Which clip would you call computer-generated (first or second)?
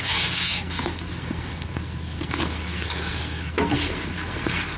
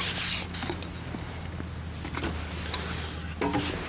first